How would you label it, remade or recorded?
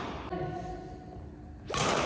recorded